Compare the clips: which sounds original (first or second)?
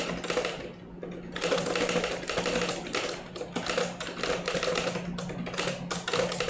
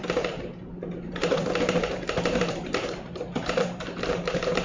first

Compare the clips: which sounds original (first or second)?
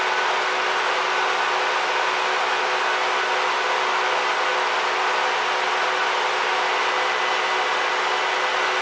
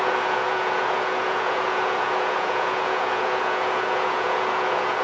first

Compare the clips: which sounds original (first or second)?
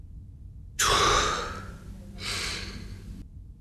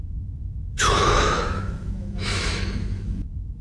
first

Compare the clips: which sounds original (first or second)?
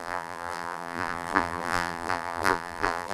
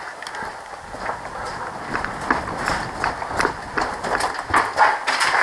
second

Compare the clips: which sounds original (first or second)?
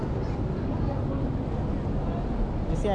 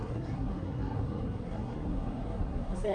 first